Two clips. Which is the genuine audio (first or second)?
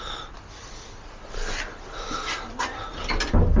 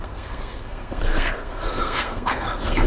first